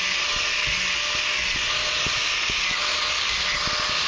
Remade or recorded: recorded